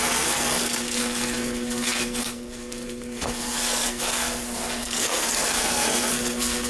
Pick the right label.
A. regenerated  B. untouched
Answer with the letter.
A